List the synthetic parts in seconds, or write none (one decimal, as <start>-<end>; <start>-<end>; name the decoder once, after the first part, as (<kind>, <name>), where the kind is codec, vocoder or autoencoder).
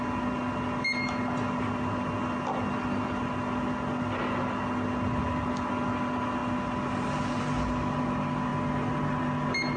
none